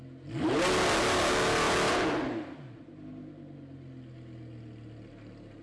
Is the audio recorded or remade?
recorded